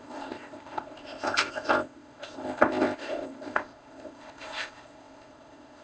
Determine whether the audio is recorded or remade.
remade